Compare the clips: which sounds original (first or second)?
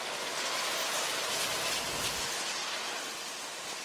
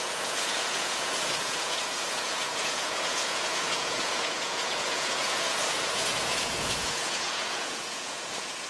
first